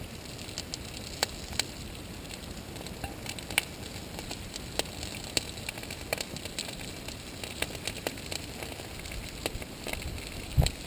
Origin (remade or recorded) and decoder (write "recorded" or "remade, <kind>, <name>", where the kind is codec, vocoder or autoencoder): recorded